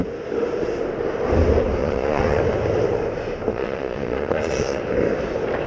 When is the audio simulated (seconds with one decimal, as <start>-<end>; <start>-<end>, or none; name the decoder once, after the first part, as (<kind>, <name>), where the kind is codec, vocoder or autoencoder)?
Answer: 1.8-2.4 (vocoder, Vocos); 3.5-4.8